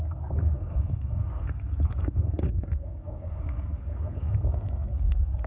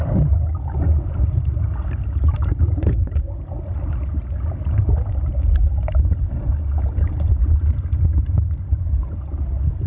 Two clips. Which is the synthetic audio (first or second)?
first